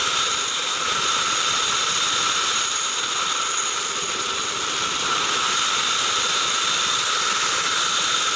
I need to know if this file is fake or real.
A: real